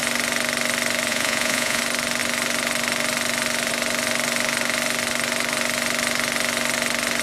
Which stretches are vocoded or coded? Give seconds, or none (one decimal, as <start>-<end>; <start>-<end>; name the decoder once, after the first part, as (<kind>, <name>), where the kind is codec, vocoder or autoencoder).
1.1-1.8 (vocoder, Vocos)